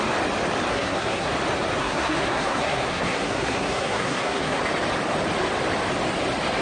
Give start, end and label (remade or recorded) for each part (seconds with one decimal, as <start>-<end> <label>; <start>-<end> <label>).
0.0-0.7 recorded; 0.7-1.3 remade; 1.3-1.8 recorded; 1.8-4.6 remade; 4.6-6.6 recorded